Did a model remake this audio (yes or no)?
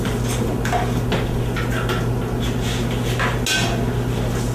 no